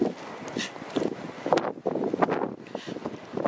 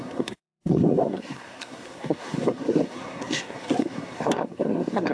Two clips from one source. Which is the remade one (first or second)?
second